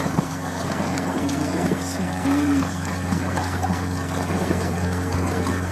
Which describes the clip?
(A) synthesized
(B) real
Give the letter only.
A